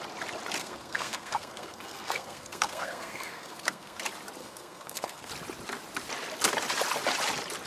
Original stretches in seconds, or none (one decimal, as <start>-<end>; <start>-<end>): 0.0-0.6; 4.0-4.4; 5.3-7.7